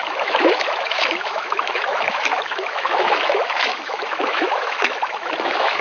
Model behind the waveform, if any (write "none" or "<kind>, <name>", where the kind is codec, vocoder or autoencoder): autoencoder, DAC-VAE